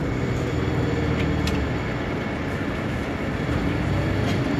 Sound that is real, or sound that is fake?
real